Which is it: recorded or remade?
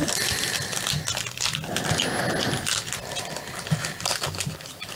recorded